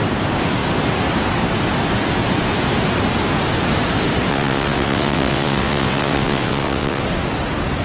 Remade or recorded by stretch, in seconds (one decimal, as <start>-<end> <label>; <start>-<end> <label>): 0.0-4.3 recorded; 4.3-7.0 remade; 7.0-7.8 recorded

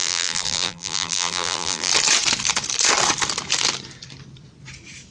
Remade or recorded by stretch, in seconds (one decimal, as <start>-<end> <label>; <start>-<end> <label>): 0.0-1.9 remade; 1.9-5.1 recorded

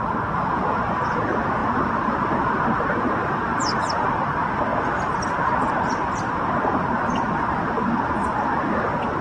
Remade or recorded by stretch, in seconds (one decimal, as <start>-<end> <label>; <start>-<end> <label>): 0.0-9.2 recorded

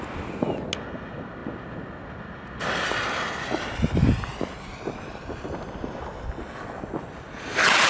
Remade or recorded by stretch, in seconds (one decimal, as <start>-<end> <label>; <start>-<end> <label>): 0.0-7.9 recorded

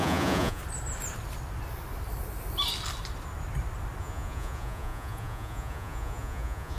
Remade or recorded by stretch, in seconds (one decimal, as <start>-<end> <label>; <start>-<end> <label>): 0.0-0.6 remade; 0.6-4.0 recorded; 4.0-6.8 remade

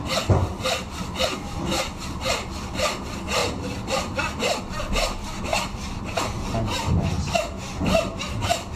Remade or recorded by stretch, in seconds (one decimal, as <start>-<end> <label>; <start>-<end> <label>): 0.0-3.4 recorded; 3.4-4.0 remade; 4.0-5.5 recorded; 5.5-6.0 remade; 6.0-8.8 recorded